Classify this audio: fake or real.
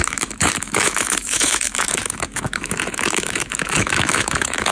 fake